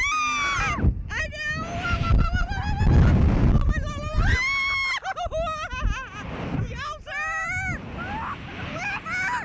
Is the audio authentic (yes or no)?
yes